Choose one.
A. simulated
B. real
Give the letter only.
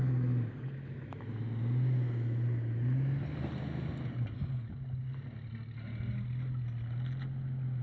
B